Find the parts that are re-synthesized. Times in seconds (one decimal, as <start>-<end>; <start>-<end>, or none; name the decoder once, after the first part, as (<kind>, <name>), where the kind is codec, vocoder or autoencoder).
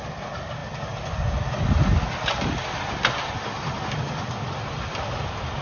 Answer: none